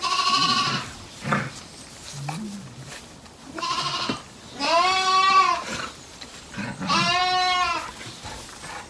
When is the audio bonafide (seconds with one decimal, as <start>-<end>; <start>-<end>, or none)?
0.0-8.9